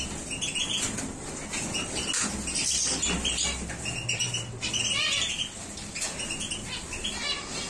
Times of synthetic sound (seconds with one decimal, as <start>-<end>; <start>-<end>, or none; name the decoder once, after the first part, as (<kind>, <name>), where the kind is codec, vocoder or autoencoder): none